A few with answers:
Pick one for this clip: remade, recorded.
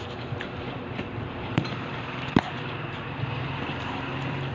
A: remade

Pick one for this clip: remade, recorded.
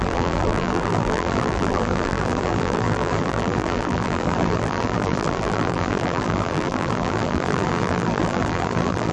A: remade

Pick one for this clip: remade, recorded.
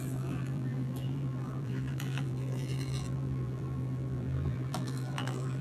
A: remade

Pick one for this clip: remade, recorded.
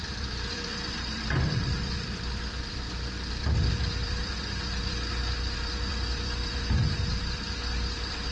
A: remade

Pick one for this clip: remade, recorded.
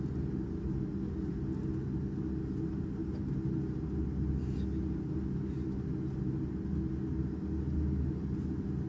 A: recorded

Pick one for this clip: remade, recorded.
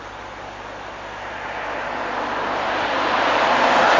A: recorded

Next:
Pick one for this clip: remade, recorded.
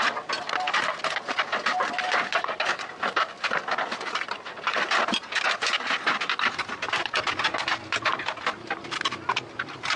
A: recorded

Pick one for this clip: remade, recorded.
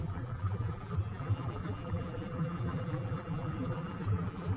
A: remade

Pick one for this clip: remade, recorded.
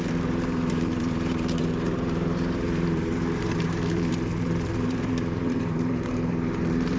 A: remade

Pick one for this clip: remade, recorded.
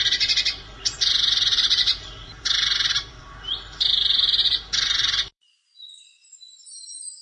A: remade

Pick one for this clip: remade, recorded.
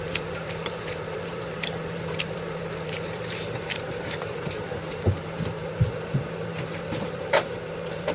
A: remade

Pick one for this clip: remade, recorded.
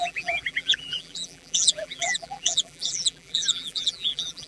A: remade